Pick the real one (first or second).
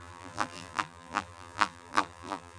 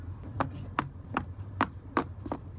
second